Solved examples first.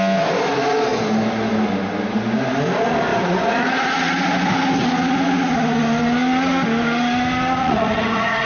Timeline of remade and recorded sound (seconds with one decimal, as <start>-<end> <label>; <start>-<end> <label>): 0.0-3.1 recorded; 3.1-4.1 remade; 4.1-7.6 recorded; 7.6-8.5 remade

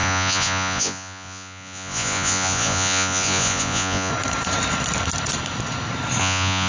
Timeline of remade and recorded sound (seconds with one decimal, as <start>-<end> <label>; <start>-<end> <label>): 0.0-4.1 remade; 4.1-6.2 recorded; 6.2-6.7 remade

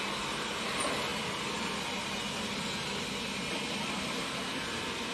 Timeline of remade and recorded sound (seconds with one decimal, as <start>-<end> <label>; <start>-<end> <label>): 0.0-5.1 recorded